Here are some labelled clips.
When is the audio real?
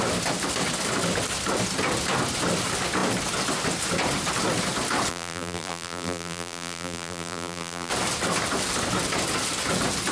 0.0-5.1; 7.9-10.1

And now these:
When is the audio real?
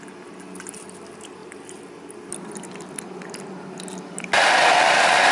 0.0-5.3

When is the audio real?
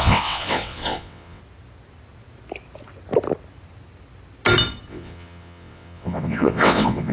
1.4-4.9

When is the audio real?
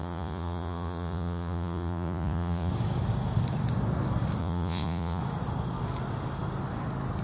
2.7-4.4; 5.2-7.2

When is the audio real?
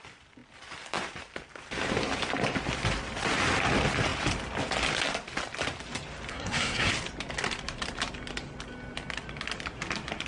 0.0-6.3; 6.9-10.3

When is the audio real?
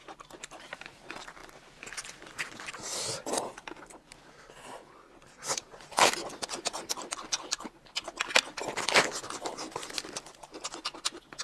0.0-11.4